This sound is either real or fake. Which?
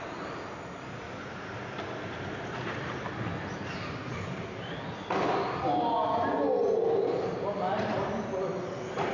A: real